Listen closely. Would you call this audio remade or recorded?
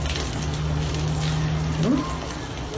recorded